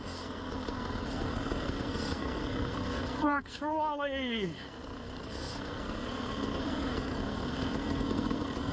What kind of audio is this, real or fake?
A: fake